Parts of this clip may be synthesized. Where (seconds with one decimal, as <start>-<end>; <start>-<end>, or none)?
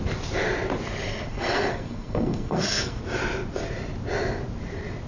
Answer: 1.3-3.0